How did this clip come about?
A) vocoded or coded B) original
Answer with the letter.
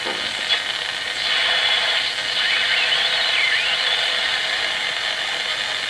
B